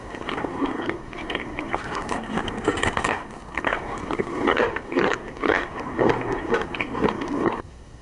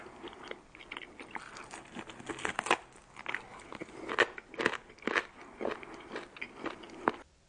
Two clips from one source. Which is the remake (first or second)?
first